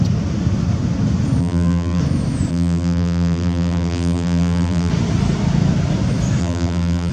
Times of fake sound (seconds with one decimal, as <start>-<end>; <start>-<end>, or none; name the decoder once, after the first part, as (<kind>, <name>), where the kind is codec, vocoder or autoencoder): 1.4-2.0 (vocoder, BigVGAN v2); 2.5-4.9; 6.4-7.1